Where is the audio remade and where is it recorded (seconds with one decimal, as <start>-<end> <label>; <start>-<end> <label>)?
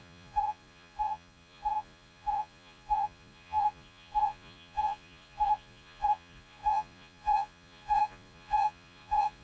0.0-9.4 remade